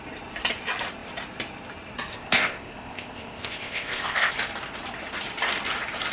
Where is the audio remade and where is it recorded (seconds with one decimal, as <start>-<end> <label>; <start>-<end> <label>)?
0.0-2.1 recorded; 2.1-4.3 remade; 4.3-6.1 recorded